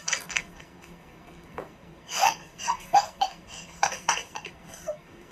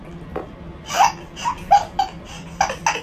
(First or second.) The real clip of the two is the second